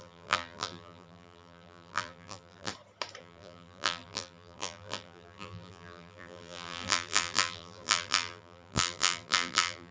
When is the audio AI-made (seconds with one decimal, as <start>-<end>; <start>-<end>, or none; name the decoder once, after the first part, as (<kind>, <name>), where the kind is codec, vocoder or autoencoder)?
0.0-2.7 (vocoder, BigVGAN v2); 3.2-9.9